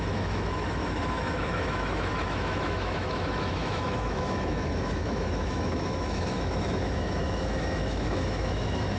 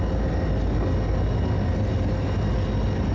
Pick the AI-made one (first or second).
first